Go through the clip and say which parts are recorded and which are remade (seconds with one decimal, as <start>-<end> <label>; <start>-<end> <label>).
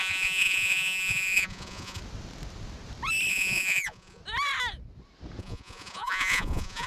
0.0-2.0 remade; 2.0-3.3 recorded; 3.3-4.2 remade; 4.2-5.4 recorded; 5.4-6.9 remade